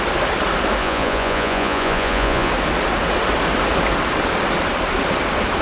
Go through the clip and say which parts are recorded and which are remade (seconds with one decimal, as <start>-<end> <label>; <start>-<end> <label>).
0.0-0.8 recorded; 0.8-2.5 remade; 2.5-5.6 recorded